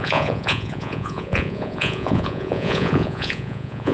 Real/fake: fake